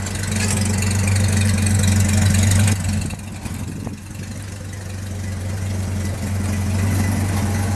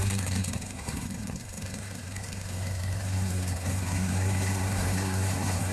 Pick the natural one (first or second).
first